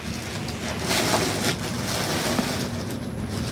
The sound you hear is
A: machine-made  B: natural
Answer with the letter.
B